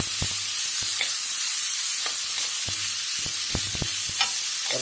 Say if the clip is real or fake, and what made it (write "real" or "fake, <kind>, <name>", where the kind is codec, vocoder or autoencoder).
real